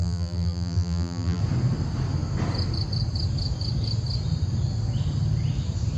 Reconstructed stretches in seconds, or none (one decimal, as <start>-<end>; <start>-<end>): 0.0-1.4